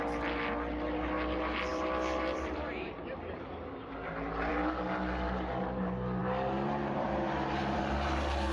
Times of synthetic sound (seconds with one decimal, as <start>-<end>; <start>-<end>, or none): 1.7-4.5; 6.2-7.8

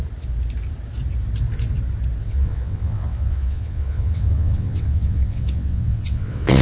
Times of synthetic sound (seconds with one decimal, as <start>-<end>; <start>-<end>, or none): 2.2-6.6

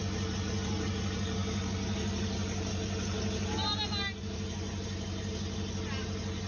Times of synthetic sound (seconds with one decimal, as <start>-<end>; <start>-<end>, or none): none

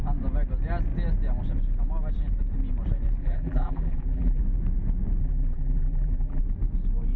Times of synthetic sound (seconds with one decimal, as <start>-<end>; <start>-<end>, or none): 3.2-4.4; 5.2-6.4

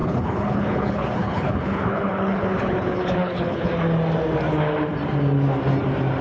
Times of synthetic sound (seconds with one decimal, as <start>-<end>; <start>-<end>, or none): 0.0-3.7